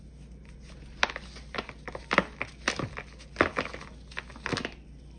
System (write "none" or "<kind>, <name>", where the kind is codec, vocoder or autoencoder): none